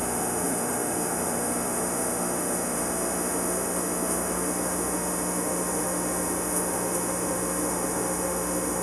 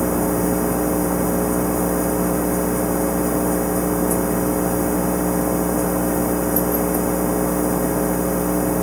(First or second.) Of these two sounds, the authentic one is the second